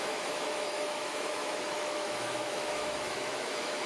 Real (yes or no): no